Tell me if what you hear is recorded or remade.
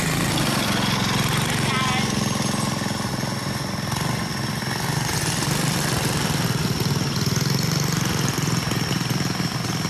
recorded